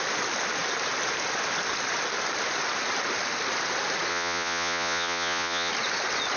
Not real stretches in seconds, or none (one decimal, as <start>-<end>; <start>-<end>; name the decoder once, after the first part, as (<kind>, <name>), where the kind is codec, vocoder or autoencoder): 4.1-5.7 (vocoder, Vocos)